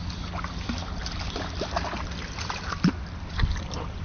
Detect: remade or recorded recorded